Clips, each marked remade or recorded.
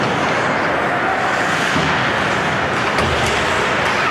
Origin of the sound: recorded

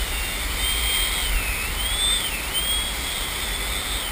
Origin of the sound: recorded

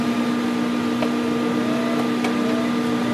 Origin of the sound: recorded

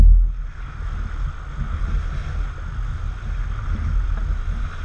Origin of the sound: recorded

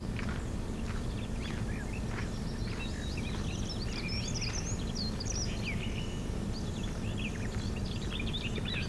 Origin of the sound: recorded